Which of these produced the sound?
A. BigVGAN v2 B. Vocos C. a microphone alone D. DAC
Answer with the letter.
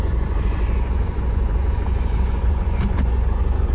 B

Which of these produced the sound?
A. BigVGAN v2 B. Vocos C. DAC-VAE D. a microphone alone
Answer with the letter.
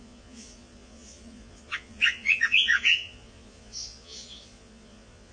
B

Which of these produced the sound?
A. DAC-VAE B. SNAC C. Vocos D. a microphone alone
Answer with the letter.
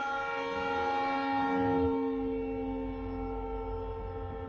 D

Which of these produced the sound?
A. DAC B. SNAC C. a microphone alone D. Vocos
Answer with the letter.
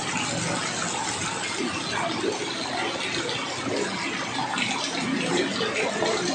C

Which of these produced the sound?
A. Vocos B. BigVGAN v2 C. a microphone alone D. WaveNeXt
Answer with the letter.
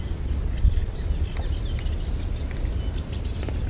C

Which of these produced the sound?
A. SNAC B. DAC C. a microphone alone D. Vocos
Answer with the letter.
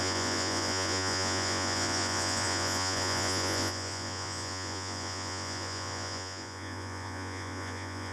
D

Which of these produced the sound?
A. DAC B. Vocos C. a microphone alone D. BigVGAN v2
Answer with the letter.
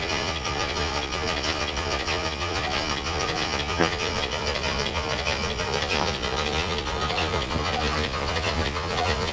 B